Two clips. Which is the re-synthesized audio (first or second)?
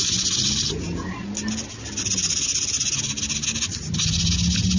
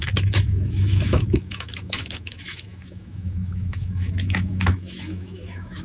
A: second